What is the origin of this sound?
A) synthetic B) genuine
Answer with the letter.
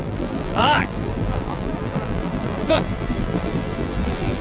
A